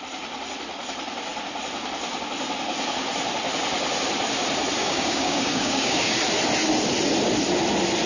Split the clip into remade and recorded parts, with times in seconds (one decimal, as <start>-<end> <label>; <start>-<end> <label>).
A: 0.0-4.8 recorded; 4.8-6.2 remade; 6.2-8.1 recorded

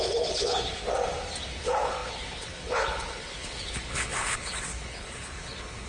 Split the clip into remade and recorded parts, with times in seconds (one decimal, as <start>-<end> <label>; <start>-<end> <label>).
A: 0.0-0.8 remade; 0.8-1.5 recorded; 1.5-5.9 remade

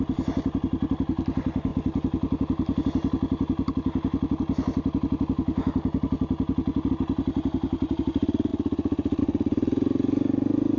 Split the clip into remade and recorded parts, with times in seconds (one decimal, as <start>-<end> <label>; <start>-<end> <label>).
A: 0.0-10.8 recorded

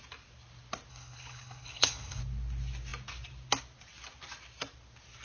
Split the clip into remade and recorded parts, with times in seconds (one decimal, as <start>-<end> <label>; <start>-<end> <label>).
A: 0.0-0.9 recorded; 0.9-2.2 remade; 2.2-5.2 recorded

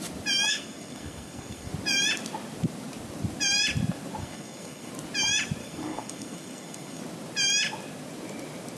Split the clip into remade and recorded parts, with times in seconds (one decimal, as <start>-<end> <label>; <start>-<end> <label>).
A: 0.0-0.5 recorded; 0.5-1.7 remade; 1.7-4.2 recorded; 4.2-4.9 remade; 4.9-5.6 recorded; 5.6-7.0 remade; 7.0-8.8 recorded

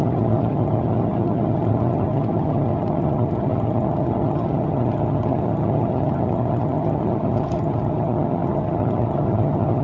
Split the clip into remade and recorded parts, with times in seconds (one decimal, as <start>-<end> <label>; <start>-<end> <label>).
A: 0.0-9.8 remade

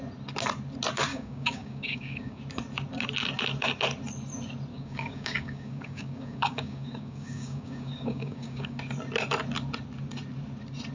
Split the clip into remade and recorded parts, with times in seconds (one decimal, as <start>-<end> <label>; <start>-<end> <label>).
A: 0.0-1.1 recorded; 1.1-2.4 remade; 2.4-4.7 recorded; 4.7-8.8 remade; 8.8-10.9 recorded